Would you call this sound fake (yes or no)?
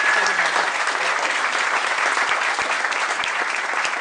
no